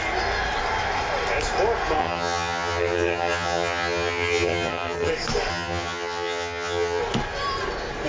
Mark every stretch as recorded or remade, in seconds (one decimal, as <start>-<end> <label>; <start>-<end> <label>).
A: 0.0-2.0 recorded; 2.0-5.1 remade; 5.1-5.5 recorded; 5.5-7.0 remade; 7.0-8.1 recorded